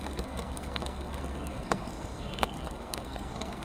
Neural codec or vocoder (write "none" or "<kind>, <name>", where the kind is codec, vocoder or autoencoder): codec, SNAC